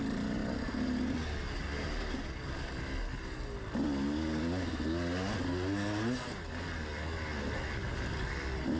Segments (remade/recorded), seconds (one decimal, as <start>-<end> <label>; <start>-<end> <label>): 0.0-8.8 recorded